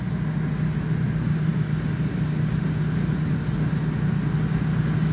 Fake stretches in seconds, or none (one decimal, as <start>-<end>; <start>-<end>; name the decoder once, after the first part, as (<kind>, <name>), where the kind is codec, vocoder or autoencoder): none